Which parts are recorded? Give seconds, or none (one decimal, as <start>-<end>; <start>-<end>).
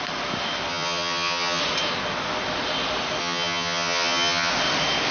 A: 0.0-0.7; 1.6-3.2; 4.5-5.1